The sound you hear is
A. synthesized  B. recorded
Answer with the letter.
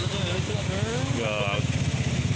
B